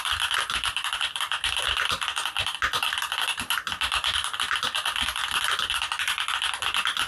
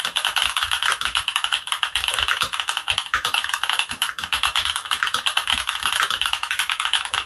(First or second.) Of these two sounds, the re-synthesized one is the second